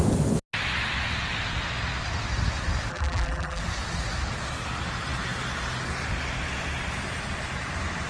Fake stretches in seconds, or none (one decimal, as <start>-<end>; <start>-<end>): 2.9-3.6